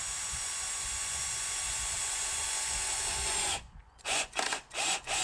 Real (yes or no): no